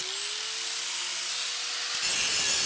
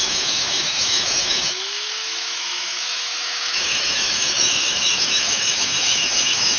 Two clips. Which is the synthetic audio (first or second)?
second